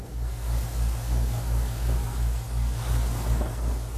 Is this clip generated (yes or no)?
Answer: yes